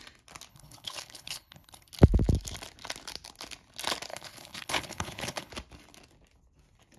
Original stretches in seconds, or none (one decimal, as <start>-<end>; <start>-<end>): 0.0-0.5; 1.9-4.1; 5.5-7.0